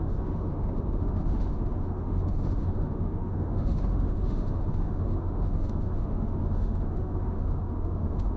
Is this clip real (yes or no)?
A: no